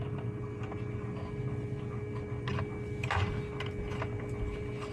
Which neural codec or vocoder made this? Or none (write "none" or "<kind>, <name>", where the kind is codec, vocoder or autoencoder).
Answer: none